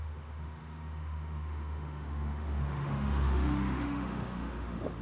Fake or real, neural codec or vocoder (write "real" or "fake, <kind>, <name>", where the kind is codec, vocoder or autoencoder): fake, autoencoder, DAC-VAE